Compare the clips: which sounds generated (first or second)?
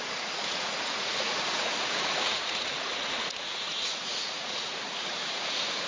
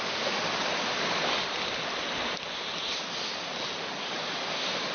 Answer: first